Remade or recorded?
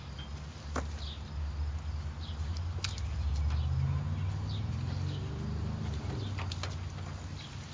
recorded